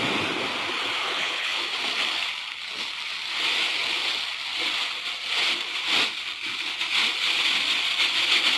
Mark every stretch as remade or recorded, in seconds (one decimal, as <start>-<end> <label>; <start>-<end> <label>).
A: 0.0-1.0 recorded; 1.0-1.6 remade; 1.6-8.6 recorded